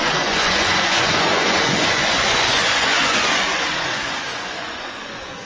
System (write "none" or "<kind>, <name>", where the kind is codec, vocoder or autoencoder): vocoder, Vocos